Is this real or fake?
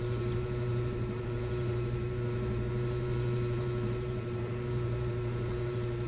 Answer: fake